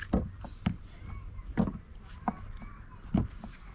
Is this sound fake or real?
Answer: real